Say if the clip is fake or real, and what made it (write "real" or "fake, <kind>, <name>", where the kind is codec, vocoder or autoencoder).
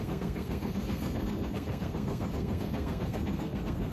fake, codec, SNAC